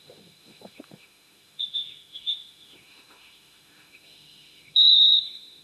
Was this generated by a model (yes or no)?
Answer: yes